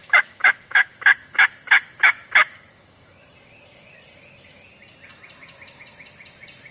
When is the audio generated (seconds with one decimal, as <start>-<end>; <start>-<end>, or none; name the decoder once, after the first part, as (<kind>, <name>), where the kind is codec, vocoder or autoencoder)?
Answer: 0.0-3.3 (autoencoder, DAC-VAE)